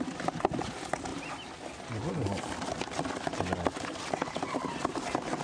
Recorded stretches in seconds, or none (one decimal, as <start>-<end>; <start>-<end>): 0.0-5.4